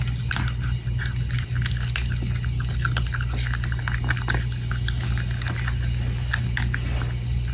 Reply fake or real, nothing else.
real